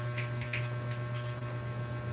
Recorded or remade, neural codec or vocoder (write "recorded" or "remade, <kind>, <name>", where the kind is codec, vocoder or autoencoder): recorded